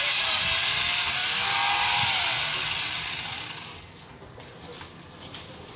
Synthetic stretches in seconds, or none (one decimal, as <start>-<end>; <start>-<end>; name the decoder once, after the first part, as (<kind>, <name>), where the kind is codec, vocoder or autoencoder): none